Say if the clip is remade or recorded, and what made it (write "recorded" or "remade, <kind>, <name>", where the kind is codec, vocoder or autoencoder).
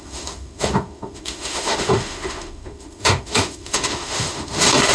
remade, autoencoder, DAC-VAE